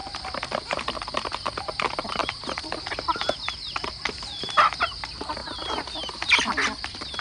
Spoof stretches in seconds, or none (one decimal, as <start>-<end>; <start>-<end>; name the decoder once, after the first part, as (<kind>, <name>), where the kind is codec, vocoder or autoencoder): 2.2-4.4 (vocoder, BigVGAN v2)